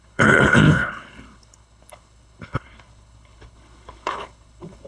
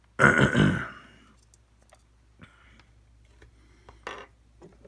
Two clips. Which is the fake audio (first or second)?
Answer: first